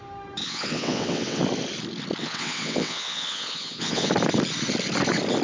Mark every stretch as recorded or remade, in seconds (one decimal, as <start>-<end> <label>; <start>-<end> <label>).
0.0-0.4 recorded; 0.4-1.4 remade; 1.4-2.2 recorded; 2.2-4.1 remade; 4.1-5.4 recorded

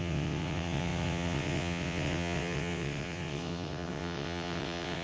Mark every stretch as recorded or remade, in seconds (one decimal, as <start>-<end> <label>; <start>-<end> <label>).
0.0-5.0 remade

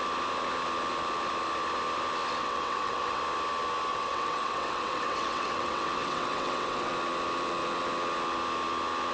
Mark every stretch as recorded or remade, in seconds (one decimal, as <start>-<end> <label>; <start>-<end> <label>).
0.0-2.4 recorded; 2.4-3.2 remade; 3.2-3.9 recorded; 3.9-6.9 remade; 6.9-9.1 recorded

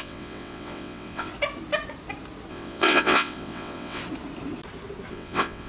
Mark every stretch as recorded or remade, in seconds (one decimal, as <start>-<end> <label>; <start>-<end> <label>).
0.0-1.3 remade; 1.3-2.5 recorded; 2.5-4.0 remade; 4.0-5.1 recorded; 5.1-5.7 remade

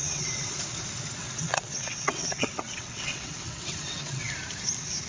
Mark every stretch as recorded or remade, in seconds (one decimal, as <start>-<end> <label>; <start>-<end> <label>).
0.0-0.6 remade; 0.6-1.2 recorded; 1.2-4.3 remade; 4.3-5.1 recorded

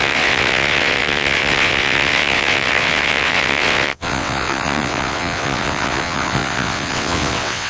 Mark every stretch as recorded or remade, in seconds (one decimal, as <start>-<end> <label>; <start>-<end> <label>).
0.0-7.7 remade